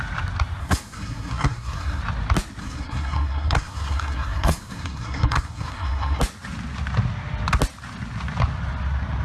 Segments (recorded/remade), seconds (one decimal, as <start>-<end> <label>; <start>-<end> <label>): 0.0-0.6 recorded; 0.6-2.0 remade; 2.0-2.6 recorded; 2.6-6.2 remade; 6.2-9.2 recorded